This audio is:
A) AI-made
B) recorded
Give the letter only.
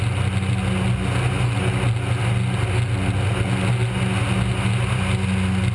B